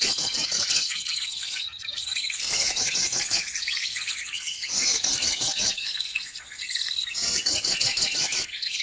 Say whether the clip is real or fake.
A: fake